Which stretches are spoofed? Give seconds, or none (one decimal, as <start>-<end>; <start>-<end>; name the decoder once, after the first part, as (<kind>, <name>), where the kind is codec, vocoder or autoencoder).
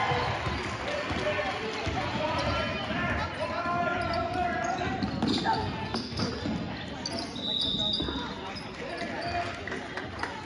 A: 5.8-6.3 (codec, SNAC)